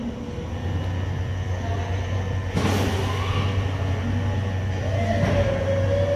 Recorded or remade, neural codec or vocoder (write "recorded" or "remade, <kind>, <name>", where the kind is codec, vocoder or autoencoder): recorded